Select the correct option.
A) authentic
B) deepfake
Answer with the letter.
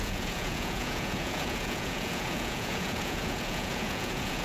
B